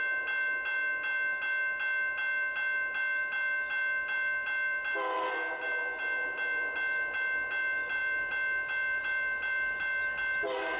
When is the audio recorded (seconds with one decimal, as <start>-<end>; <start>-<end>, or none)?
0.0-10.8